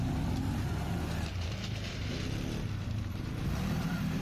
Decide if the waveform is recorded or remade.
recorded